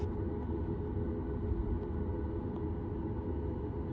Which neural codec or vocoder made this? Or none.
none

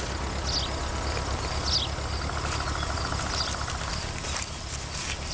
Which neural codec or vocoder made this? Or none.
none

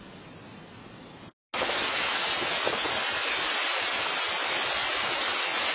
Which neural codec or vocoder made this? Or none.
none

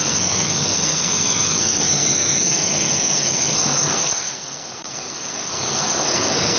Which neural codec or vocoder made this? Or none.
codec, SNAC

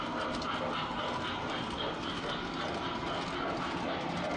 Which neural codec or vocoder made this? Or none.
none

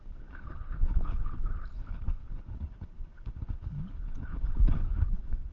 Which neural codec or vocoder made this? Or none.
codec, HILCodec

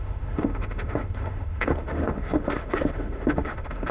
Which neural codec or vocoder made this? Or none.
autoencoder, DAC-VAE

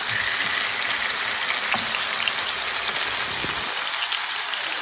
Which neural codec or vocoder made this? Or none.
none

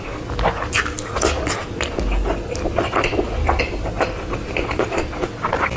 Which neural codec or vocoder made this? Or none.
none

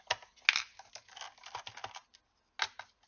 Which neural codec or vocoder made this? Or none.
none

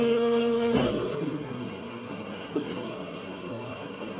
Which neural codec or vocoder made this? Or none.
codec, SNAC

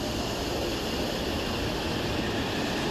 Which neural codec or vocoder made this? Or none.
none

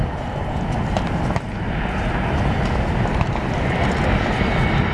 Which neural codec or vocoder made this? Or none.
none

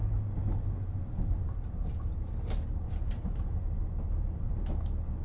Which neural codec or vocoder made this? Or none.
none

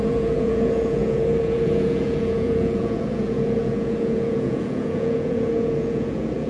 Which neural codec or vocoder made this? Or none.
vocoder, Vocos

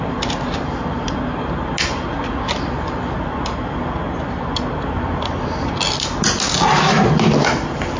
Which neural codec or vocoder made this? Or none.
none